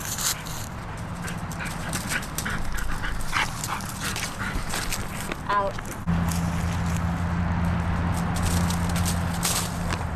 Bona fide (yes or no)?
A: yes